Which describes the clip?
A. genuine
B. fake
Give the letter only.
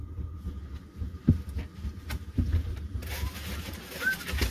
A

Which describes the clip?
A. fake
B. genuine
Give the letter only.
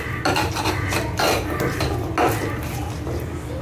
B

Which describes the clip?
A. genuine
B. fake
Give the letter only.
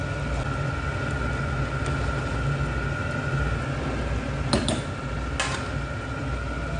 A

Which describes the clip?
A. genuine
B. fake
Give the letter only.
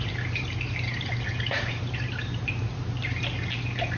B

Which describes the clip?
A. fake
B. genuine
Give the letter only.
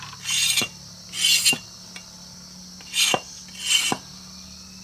B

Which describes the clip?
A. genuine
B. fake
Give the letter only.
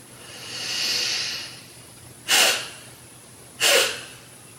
A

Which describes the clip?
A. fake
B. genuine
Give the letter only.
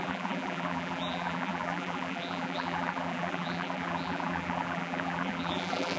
A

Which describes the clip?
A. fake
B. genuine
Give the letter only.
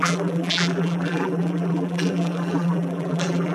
A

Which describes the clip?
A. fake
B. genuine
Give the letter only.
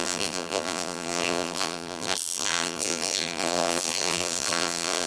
A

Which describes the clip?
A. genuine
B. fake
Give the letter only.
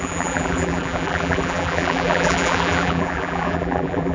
B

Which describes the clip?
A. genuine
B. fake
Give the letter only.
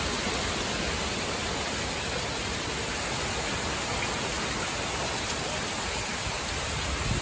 A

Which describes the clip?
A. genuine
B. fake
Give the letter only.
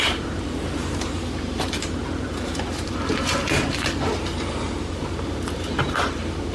B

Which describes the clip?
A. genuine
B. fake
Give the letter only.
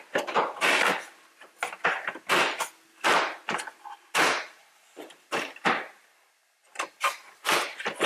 A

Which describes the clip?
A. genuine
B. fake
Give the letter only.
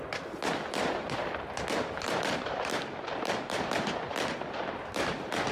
B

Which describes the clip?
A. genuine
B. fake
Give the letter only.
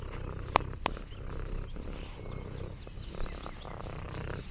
A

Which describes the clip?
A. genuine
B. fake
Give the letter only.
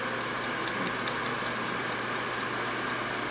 A